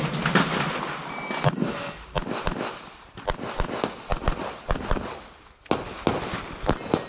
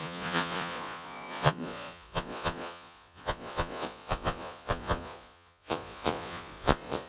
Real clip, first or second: first